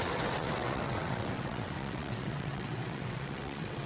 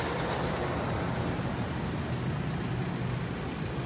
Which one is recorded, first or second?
second